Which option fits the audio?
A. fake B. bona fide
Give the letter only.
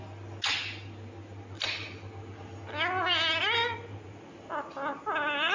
B